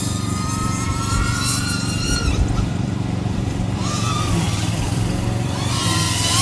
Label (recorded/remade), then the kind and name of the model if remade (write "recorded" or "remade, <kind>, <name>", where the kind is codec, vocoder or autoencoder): remade, vocoder, BigVGAN v2